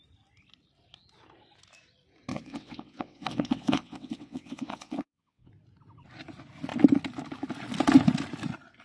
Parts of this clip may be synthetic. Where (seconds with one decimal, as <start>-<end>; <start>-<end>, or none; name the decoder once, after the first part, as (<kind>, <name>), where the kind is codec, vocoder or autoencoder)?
2.3-5.5 (vocoder, WaveNeXt)